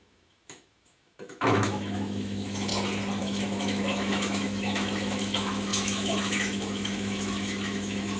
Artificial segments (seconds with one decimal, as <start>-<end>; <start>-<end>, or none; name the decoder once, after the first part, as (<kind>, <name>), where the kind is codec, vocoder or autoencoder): 0.0-2.7 (autoencoder, DAC-VAE); 3.2-8.2